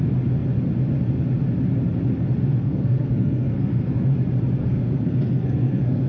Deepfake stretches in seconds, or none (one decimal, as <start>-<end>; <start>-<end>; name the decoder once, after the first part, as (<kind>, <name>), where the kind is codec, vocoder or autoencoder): 2.6-3.9 (codec, SNAC); 4.6-6.1